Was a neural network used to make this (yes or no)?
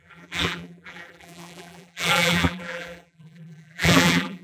yes